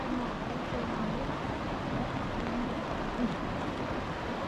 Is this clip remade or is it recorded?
recorded